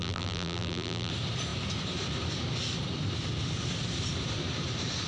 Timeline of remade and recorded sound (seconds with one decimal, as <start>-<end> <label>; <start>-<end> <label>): 0.0-1.1 remade; 1.1-5.1 recorded